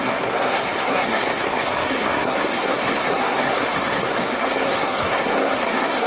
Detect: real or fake fake